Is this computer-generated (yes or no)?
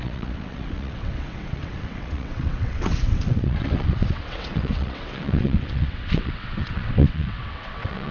yes